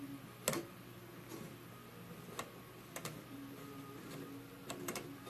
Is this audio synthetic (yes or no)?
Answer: no